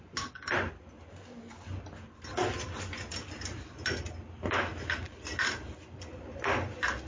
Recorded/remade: recorded